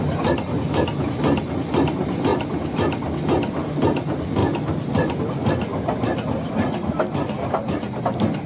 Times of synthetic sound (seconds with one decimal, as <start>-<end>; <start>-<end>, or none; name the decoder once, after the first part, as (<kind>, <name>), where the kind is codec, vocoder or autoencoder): 2.3-3.2 (vocoder, BigVGAN v2); 5.7-8.0